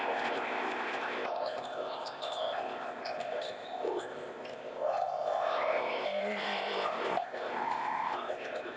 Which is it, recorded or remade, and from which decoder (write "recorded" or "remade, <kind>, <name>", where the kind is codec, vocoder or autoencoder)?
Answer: remade, codec, ZipCodec